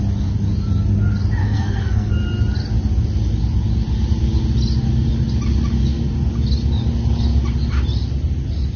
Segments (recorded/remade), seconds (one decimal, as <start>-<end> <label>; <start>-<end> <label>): 0.0-1.4 recorded; 1.4-2.1 remade; 2.1-8.8 recorded